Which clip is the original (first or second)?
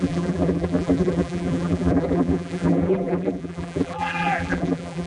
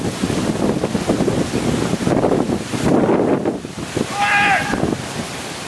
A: second